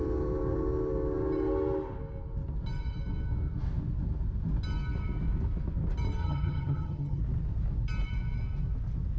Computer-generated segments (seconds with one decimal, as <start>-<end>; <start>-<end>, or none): 6.2-7.2